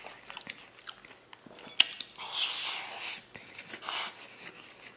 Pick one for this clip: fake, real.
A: real